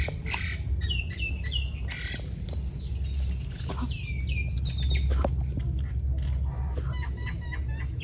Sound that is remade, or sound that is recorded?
recorded